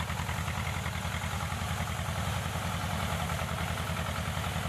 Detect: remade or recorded recorded